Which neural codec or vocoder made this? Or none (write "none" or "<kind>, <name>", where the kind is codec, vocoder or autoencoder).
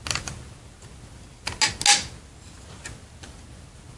none